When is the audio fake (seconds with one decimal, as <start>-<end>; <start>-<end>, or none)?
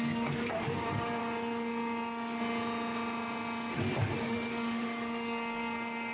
0.0-1.2; 4.2-6.1